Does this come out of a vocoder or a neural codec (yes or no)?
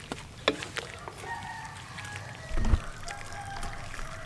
no